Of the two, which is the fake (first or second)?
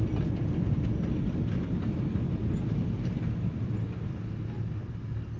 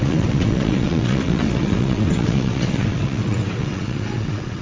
second